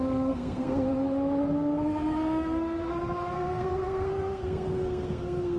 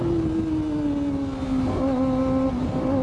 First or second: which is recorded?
second